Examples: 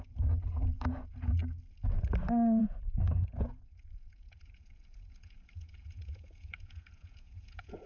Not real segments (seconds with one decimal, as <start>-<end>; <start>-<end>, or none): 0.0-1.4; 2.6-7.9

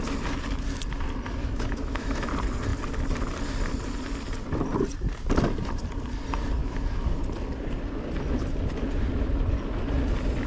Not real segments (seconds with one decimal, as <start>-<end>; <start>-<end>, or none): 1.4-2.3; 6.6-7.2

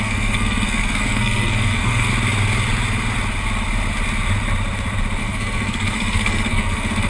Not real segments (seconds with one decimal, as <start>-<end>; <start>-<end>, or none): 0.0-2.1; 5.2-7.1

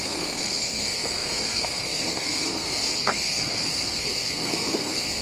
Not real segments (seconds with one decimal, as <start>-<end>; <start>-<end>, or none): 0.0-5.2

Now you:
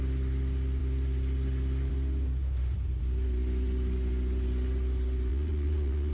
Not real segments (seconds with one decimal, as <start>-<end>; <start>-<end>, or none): 5.3-6.1

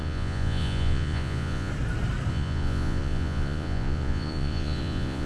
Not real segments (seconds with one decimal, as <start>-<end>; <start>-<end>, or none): 0.0-1.7; 2.3-5.3